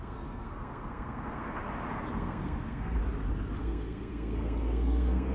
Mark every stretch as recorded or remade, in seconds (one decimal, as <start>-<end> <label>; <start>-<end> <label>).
0.0-1.6 remade; 1.6-2.1 recorded; 2.1-3.0 remade; 3.0-3.6 recorded; 3.6-5.3 remade